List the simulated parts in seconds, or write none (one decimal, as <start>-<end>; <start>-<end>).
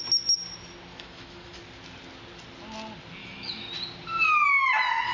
0.9-1.6; 3.2-3.7